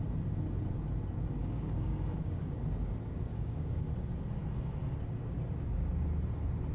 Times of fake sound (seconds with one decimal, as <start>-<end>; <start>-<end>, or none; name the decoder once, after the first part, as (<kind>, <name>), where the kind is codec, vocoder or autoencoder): 1.4-2.6 (codec, DAC); 3.3-3.9